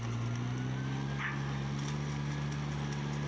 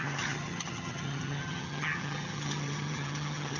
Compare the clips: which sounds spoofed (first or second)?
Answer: second